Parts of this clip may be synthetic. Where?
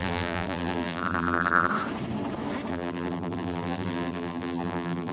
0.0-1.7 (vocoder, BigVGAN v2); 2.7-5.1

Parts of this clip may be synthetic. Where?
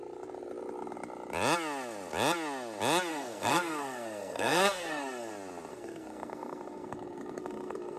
3.1-5.3 (codec, SNAC); 5.7-8.0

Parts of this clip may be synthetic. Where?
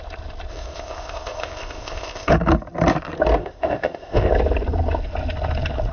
0.5-2.3 (codec, ZipCodec); 3.4-4.3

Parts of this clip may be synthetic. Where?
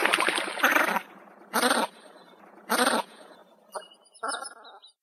3.0-3.4 (vocoder, Vocos)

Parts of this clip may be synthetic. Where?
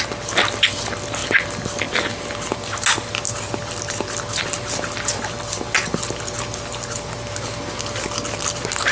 none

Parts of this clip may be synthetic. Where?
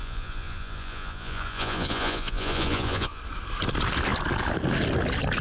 0.0-3.2 (vocoder, Vocos)